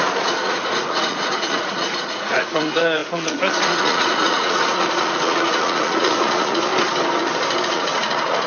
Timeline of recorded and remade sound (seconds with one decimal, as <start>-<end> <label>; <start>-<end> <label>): 0.0-6.7 remade; 6.7-7.6 recorded; 7.6-8.5 remade